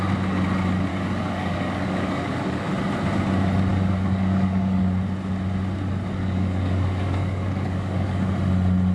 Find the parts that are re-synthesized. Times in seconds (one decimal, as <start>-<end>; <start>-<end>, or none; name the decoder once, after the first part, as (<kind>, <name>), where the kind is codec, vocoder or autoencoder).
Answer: 0.9-2.7 (codec, DAC); 3.7-4.8; 6.2-8.3

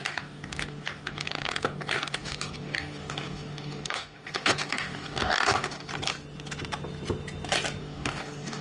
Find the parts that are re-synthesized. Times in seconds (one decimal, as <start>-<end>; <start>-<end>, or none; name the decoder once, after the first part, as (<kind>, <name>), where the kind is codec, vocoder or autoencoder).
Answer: 0.0-5.9 (codec, DAC); 7.8-8.6